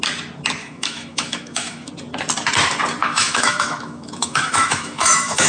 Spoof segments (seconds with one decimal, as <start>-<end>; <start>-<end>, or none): 0.6-1.9; 3.0-5.5